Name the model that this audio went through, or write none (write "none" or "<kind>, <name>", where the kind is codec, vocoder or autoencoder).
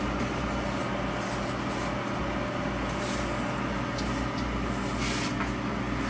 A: none